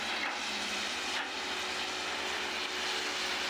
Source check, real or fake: real